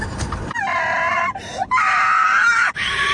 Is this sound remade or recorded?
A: recorded